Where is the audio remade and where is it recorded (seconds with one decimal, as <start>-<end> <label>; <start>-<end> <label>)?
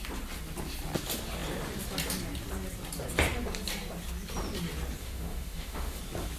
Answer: 0.0-5.0 recorded; 5.0-6.0 remade; 6.0-6.4 recorded